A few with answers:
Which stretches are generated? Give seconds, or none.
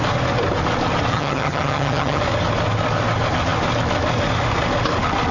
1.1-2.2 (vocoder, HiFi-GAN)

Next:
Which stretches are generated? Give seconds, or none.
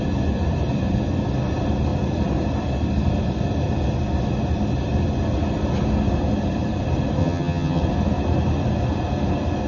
7.2-7.8 (vocoder, HiFi-GAN)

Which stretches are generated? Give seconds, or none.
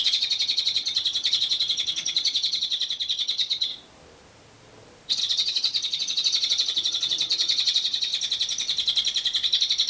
0.0-3.7 (vocoder, HiFi-GAN); 5.2-8.1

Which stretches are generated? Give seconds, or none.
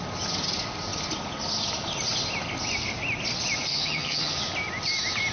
3.7-4.4 (vocoder, HiFi-GAN)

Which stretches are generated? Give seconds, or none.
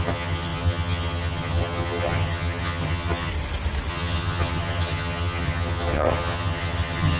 0.0-3.3 (vocoder, HiFi-GAN); 3.9-7.2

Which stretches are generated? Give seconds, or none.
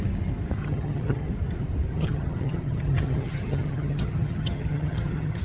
0.6-1.3 (vocoder, HiFi-GAN); 1.9-5.4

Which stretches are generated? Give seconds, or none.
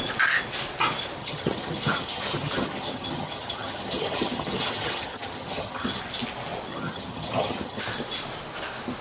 1.2-6.0 (vocoder, HiFi-GAN); 6.7-7.8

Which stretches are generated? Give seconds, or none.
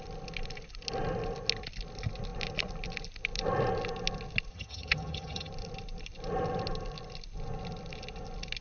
4.5-5.5 (vocoder, HiFi-GAN)